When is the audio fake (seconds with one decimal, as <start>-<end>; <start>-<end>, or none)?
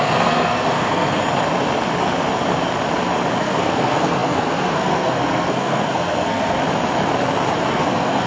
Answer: 0.0-1.2; 3.4-6.6; 7.7-8.3